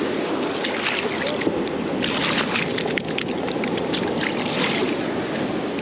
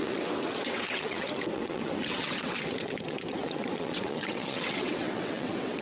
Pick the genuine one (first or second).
first